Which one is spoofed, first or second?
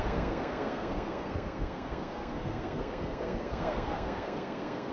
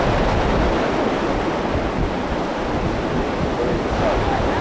first